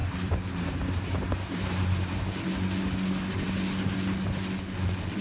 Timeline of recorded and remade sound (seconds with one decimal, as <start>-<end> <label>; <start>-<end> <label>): 0.0-2.2 remade; 2.2-5.2 recorded